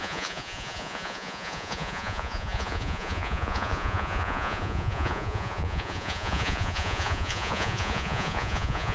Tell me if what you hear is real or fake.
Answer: fake